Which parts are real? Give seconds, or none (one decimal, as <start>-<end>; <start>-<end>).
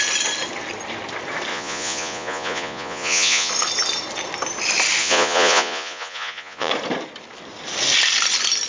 0.0-1.5; 3.5-5.0; 6.7-8.7